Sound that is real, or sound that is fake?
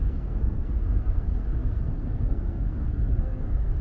fake